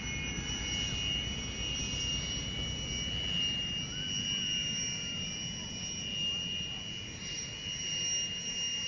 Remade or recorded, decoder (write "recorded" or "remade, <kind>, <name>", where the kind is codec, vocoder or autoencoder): recorded